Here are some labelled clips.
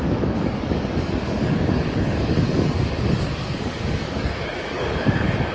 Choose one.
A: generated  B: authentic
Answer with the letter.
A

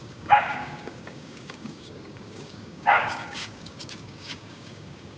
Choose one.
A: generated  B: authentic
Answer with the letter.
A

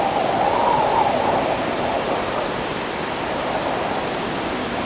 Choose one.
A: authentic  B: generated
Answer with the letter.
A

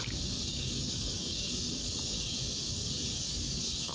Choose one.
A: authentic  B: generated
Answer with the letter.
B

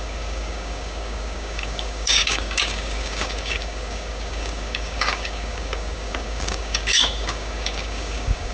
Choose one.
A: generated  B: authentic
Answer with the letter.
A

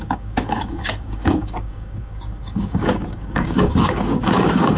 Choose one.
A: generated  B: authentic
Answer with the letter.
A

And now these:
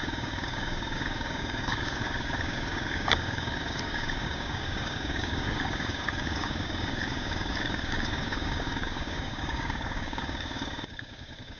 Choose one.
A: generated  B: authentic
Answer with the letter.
A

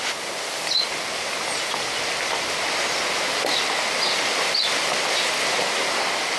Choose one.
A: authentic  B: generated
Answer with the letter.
A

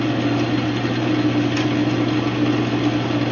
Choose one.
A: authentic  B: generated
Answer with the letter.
A